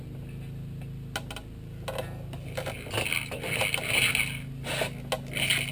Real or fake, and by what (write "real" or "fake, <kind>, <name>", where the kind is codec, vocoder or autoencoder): real